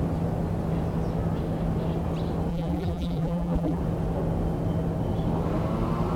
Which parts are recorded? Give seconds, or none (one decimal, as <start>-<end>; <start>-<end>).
0.0-2.5; 3.8-6.2